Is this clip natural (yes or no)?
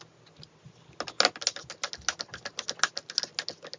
yes